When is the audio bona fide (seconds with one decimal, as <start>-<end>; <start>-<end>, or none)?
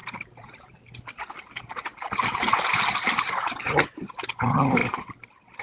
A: 0.7-4.8